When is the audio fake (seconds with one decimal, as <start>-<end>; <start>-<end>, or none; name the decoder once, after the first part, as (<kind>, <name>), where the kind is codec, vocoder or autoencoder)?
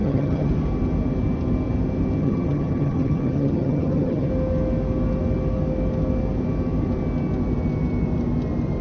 0.0-0.5 (vocoder, HiFi-GAN); 2.2-4.3